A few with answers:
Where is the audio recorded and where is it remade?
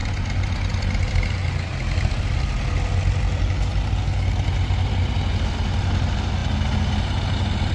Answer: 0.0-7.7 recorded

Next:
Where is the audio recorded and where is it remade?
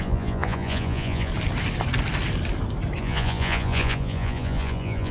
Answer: 0.0-1.3 remade; 1.3-3.0 recorded; 3.0-5.1 remade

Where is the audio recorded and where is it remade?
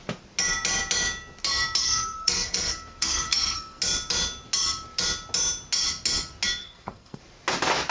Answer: 0.0-1.8 recorded; 1.8-3.8 remade; 3.8-6.6 recorded; 6.6-7.2 remade; 7.2-7.9 recorded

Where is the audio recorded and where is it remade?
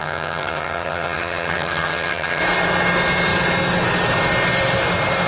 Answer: 0.0-2.4 remade; 2.4-5.3 recorded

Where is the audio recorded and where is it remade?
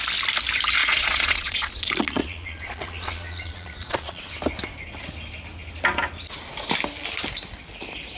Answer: 0.0-0.8 recorded; 0.8-4.3 remade; 4.3-8.2 recorded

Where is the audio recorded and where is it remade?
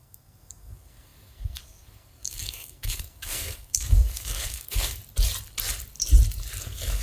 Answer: 0.0-5.0 remade; 5.0-6.6 recorded; 6.6-7.0 remade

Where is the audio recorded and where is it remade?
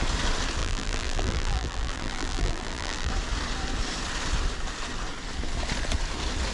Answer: 0.0-0.6 recorded; 0.6-3.1 remade; 3.1-6.5 recorded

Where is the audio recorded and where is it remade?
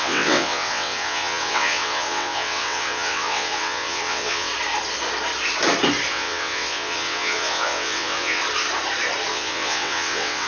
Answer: 0.0-4.5 remade; 4.5-6.1 recorded; 6.1-8.4 remade; 8.4-9.3 recorded; 9.3-10.5 remade